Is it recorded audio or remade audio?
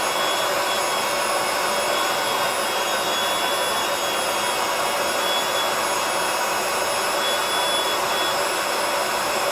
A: recorded